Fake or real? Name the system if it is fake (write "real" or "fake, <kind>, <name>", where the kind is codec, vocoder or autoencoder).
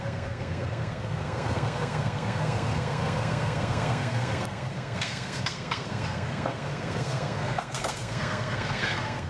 fake, codec, SNAC